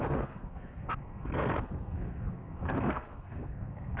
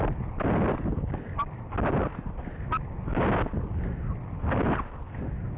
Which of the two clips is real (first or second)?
second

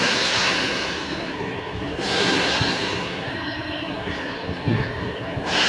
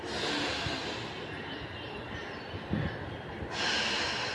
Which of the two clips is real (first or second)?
second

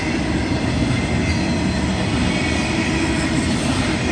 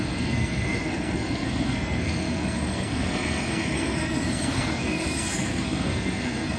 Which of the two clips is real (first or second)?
first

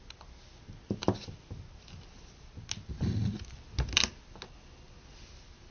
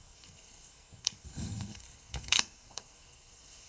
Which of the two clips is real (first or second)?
first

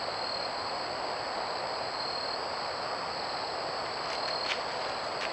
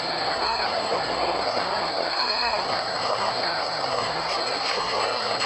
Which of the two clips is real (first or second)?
first